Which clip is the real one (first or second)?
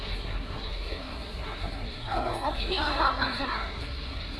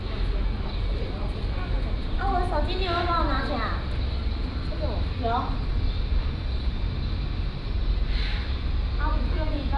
second